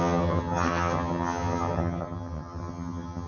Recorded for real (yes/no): no